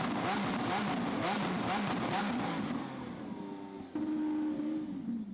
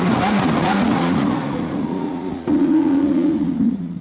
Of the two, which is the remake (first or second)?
second